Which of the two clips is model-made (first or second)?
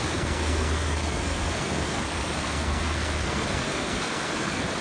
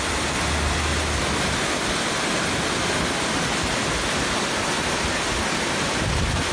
first